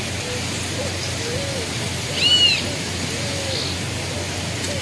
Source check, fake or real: real